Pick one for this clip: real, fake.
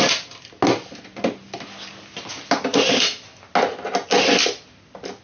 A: real